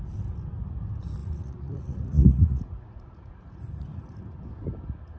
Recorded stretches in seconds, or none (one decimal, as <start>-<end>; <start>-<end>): 0.0-1.2; 4.3-5.2